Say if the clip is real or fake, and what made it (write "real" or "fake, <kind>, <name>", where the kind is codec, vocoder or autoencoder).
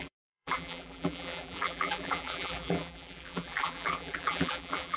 fake, vocoder, BigVGAN v2